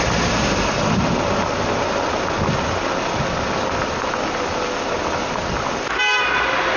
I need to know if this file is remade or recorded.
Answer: recorded